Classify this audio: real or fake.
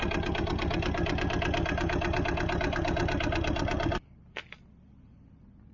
real